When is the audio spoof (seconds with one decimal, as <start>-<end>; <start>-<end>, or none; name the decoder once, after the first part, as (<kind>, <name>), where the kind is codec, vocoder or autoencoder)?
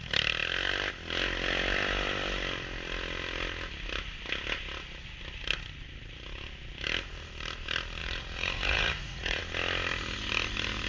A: 8.0-9.4 (vocoder, Vocos)